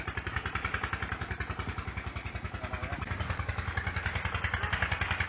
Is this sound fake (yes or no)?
no